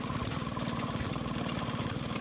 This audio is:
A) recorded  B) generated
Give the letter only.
A